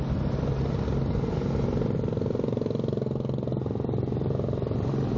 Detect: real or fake real